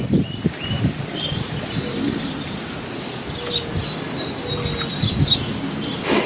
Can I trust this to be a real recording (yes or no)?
yes